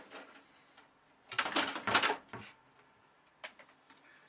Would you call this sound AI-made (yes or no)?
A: no